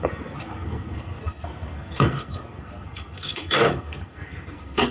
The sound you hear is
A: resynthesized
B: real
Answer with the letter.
A